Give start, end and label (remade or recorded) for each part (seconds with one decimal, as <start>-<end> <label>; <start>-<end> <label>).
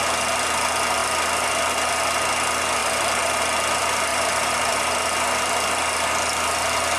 0.0-2.8 recorded; 2.8-3.4 remade; 3.4-4.1 recorded; 4.1-4.9 remade; 4.9-7.0 recorded